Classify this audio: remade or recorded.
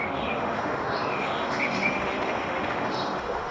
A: remade